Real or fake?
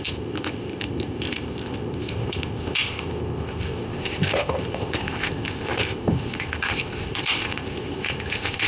fake